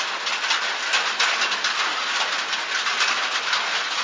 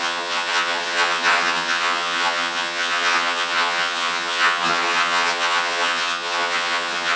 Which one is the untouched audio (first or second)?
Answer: first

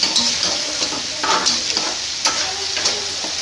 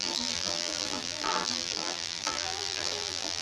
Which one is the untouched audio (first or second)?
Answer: first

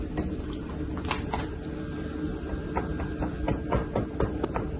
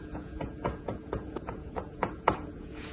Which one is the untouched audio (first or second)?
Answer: first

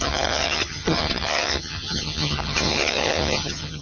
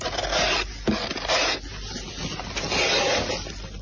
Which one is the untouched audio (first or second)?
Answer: second